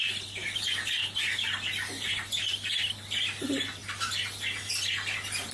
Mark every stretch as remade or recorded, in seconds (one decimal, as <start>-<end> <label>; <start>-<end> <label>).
0.0-5.5 recorded